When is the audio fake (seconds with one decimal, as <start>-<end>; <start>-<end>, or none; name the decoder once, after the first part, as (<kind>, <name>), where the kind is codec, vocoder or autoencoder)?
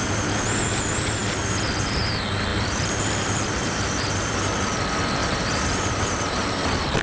2.5-4.8 (vocoder, BigVGAN v2); 5.2-6.6